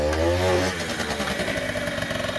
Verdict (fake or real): real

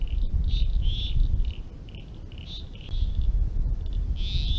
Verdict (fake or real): real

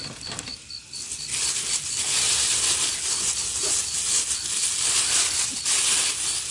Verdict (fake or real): real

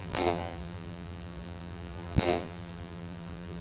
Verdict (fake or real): fake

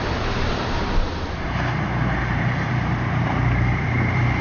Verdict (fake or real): fake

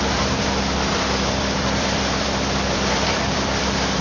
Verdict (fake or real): fake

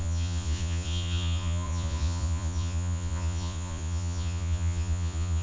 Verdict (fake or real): fake